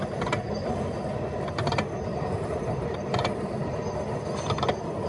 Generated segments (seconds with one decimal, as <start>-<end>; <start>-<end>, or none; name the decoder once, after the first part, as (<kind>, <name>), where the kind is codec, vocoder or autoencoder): 2.1-3.8 (vocoder, BigVGAN v2)